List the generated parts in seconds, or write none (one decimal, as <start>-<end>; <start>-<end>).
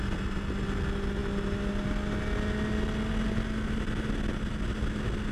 none